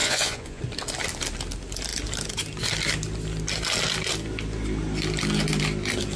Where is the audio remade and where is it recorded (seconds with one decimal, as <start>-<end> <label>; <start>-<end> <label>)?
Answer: 0.0-0.6 remade; 0.6-6.2 recorded